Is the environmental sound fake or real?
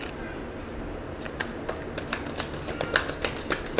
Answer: real